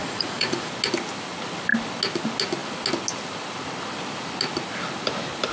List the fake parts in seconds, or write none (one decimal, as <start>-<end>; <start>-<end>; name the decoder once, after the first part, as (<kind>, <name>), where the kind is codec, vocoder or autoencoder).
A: 0.0-0.7 (vocoder, Vocos)